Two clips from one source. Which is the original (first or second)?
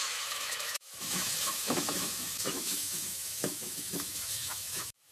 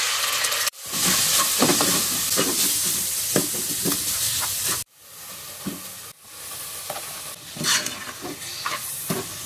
second